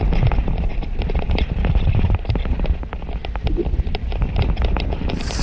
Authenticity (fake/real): real